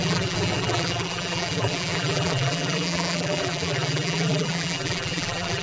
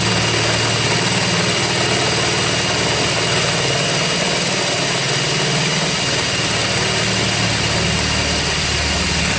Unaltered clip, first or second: second